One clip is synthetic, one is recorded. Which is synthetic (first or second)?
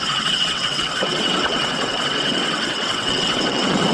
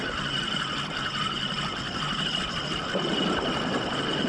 first